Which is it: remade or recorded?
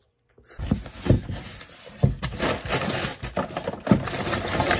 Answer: recorded